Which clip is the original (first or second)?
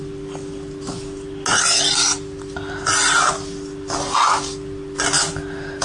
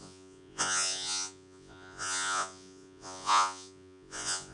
first